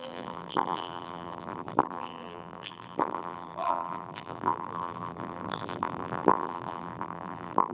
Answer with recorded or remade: remade